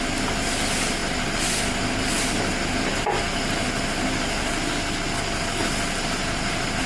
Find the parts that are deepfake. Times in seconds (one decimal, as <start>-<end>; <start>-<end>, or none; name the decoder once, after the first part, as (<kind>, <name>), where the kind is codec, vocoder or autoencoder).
none

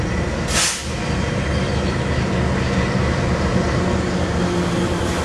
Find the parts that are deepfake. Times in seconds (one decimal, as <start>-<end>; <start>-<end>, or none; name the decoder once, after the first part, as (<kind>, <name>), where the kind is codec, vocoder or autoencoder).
none

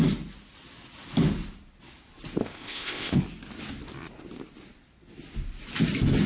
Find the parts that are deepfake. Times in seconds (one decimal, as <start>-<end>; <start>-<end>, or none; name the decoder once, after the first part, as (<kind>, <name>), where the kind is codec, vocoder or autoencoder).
2.4-3.2 (codec, ZipCodec)

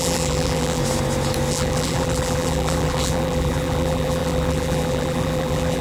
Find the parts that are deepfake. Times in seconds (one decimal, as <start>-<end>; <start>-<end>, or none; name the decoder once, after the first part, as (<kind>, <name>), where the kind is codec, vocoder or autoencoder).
0.0-0.8 (vocoder, BigVGAN v2); 1.5-5.8

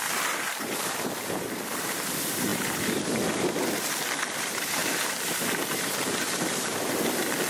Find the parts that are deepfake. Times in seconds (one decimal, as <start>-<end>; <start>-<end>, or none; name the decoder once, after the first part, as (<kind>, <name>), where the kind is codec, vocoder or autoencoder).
none

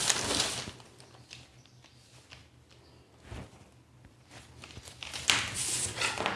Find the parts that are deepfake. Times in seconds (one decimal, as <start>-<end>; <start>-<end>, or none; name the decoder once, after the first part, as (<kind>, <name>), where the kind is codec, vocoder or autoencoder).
none